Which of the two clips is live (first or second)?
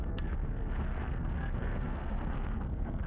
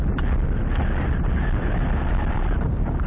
second